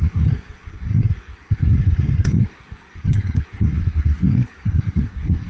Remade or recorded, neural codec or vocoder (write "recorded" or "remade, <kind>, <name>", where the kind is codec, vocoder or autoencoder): remade, codec, SNAC